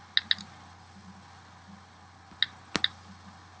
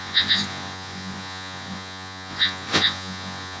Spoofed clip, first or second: second